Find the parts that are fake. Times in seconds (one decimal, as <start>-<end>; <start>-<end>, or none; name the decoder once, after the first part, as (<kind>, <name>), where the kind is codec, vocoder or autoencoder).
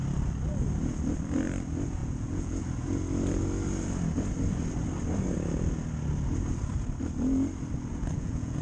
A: 2.0-2.6 (vocoder, Vocos); 7.9-8.6